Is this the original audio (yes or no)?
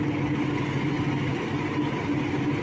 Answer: yes